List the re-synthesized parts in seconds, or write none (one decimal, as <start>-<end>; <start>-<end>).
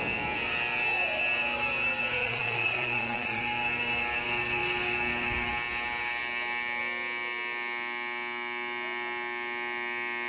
2.2-3.4